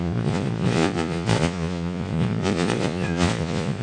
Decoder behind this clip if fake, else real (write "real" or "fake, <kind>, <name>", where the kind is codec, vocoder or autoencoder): fake, vocoder, Vocos